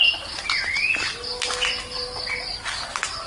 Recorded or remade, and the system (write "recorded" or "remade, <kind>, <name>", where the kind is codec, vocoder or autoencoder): recorded